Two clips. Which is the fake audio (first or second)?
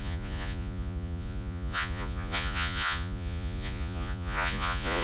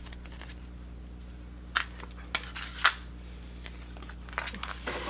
first